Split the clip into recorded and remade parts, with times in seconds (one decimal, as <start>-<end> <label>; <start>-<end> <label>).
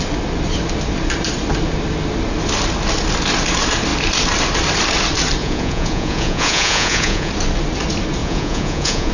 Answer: 0.0-5.4 recorded; 5.4-7.3 remade; 7.3-8.2 recorded; 8.2-9.1 remade